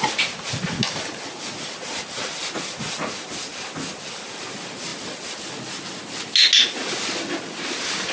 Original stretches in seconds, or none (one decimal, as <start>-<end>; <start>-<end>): 0.0-8.1